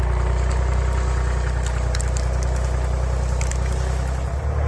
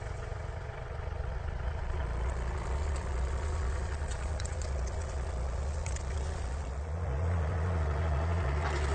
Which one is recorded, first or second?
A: first